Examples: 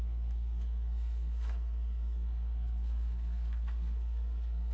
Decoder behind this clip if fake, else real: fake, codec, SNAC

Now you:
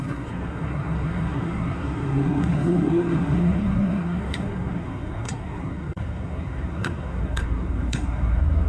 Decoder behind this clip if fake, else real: fake, codec, SNAC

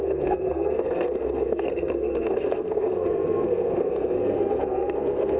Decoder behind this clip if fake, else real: fake, codec, SNAC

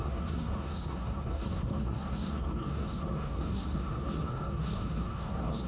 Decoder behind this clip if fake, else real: fake, codec, SNAC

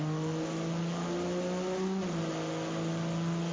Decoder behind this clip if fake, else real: real